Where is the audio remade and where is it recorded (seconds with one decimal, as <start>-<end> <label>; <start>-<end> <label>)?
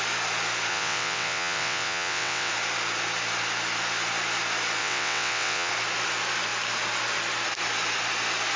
0.0-0.7 recorded; 0.7-2.5 remade; 2.5-4.8 recorded; 4.8-5.7 remade; 5.7-8.6 recorded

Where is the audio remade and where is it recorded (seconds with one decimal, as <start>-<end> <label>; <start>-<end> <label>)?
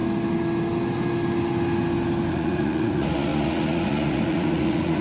0.0-2.3 recorded; 2.3-5.0 remade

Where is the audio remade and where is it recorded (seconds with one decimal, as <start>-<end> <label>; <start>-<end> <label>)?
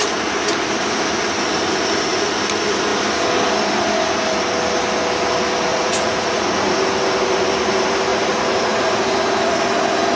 0.0-5.7 recorded; 5.7-6.8 remade; 6.8-8.1 recorded; 8.1-8.9 remade; 8.9-10.2 recorded